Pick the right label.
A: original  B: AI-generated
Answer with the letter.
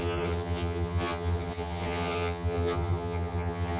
B